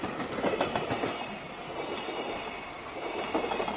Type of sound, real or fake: real